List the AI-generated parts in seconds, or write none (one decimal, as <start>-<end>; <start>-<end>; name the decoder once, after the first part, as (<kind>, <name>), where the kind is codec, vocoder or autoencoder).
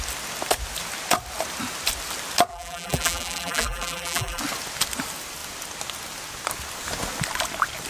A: 2.5-4.4 (vocoder, BigVGAN v2)